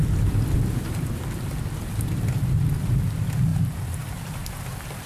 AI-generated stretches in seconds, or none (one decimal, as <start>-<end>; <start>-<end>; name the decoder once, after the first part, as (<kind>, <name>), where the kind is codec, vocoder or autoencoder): 3.5-4.6 (vocoder, BigVGAN v2)